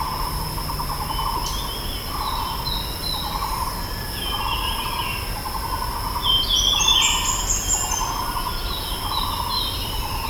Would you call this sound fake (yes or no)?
no